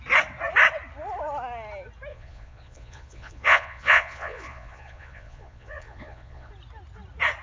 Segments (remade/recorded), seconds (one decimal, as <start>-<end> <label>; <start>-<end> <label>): 0.0-2.1 recorded; 2.1-6.5 remade; 6.5-7.4 recorded